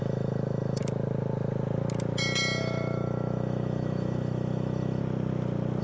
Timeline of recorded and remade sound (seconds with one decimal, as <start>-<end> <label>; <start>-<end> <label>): 0.0-0.8 remade; 0.8-2.6 recorded; 2.6-5.0 remade; 5.0-5.8 recorded